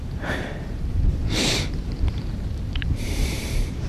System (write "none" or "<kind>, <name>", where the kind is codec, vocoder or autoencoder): vocoder, BigVGAN v2